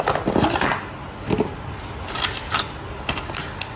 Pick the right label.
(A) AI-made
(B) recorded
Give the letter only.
B